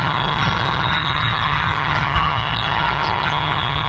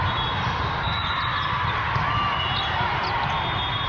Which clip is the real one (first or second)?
second